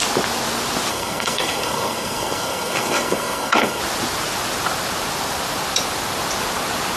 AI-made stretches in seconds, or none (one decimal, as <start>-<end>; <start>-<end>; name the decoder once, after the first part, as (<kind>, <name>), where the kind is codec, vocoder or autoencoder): 0.9-3.8 (codec, SNAC)